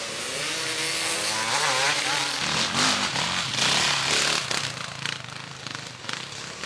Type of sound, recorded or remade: recorded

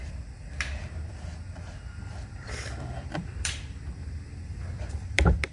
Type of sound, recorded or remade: remade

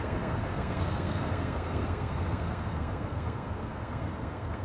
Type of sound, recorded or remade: remade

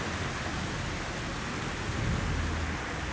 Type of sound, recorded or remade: recorded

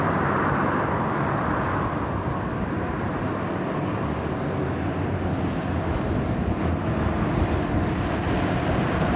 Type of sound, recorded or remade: recorded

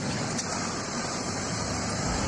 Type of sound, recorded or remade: remade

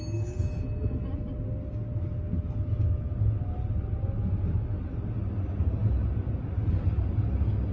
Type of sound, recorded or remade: recorded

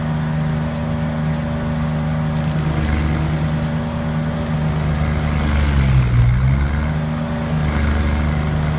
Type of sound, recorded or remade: recorded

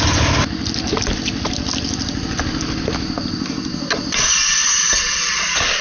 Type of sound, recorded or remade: recorded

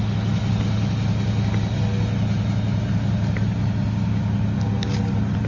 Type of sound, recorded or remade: recorded